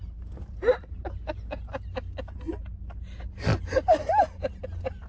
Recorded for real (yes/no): yes